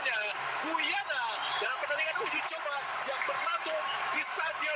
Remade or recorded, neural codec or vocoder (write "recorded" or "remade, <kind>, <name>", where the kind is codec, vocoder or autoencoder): remade, vocoder, BigVGAN v2